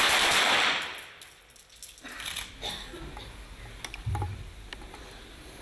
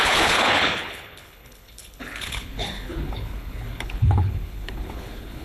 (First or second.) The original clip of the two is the first